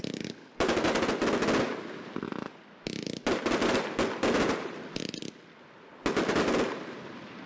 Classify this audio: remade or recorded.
recorded